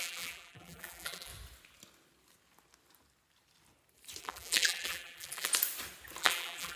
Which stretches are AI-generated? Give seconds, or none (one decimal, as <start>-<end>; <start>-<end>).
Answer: 0.0-1.3; 4.2-5.5; 6.2-6.8